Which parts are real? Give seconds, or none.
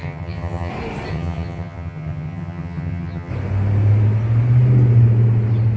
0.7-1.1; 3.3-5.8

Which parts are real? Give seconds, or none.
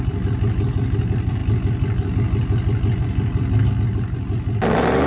0.0-5.1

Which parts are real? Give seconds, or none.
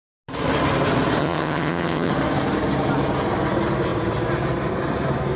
0.0-1.2; 2.1-5.4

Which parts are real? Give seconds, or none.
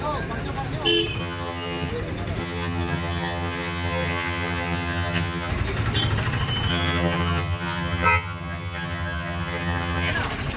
0.0-1.2; 1.9-2.4; 5.5-6.7; 10.1-10.6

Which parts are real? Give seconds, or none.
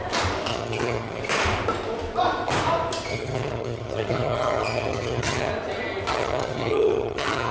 0.0-0.5; 1.2-3.1; 5.5-6.1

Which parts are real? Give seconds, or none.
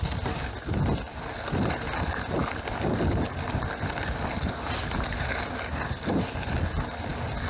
0.0-7.5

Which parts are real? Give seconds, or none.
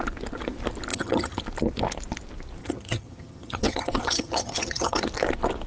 0.0-0.9; 1.4-2.6; 5.1-5.7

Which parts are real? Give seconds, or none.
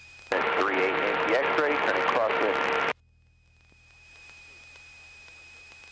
0.0-5.9